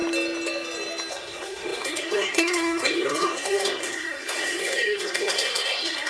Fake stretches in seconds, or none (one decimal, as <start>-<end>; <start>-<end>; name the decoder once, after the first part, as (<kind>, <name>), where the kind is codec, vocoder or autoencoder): 1.1-6.1 (codec, SNAC)